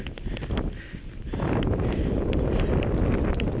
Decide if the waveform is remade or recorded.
recorded